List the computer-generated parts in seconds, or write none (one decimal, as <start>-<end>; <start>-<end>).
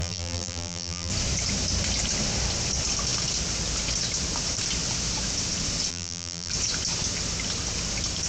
0.0-1.1; 5.9-6.5